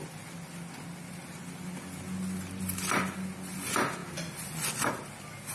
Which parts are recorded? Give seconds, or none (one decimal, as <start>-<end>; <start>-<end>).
0.0-5.5